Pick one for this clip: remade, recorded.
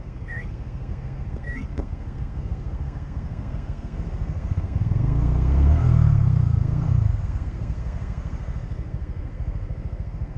remade